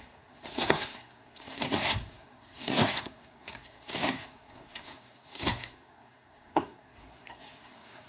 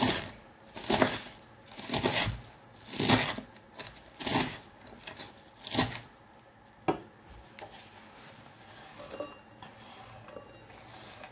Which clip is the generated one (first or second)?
first